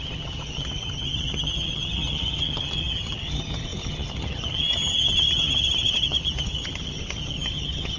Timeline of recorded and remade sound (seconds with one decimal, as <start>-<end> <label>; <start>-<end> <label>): 0.0-8.0 remade